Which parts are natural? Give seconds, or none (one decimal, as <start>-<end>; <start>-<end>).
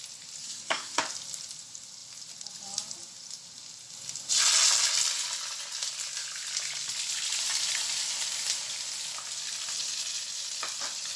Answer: 0.0-0.4; 1.0-11.2